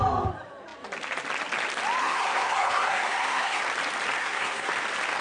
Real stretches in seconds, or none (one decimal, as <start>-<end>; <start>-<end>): 0.0-2.0; 3.6-4.2; 4.7-5.2